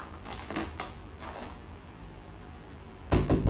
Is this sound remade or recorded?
remade